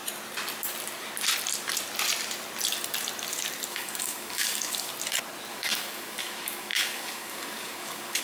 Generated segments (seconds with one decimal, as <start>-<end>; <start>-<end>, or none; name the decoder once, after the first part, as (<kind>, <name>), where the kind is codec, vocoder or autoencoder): 3.7-4.9 (codec, DAC); 5.5-8.2